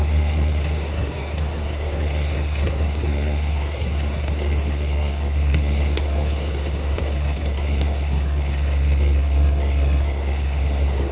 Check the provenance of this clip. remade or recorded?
remade